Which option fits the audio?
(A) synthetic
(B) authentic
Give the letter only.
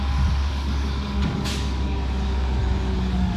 A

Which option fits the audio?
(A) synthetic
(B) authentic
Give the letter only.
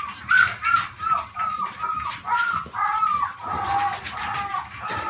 B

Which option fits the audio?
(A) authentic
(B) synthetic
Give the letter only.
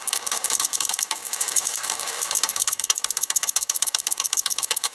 B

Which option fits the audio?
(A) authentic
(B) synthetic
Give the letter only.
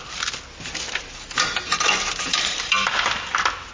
A